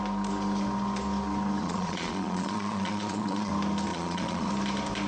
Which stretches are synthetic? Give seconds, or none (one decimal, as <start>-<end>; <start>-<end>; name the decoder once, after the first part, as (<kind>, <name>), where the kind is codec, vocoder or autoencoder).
1.6-3.5 (vocoder, Vocos); 3.9-4.5